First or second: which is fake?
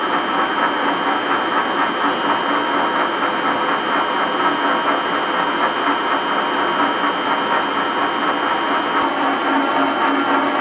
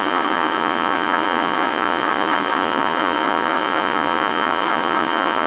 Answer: second